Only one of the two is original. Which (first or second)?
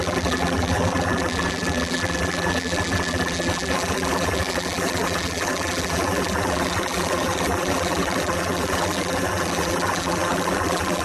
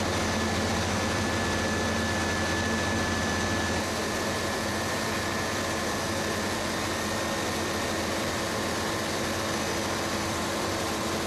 second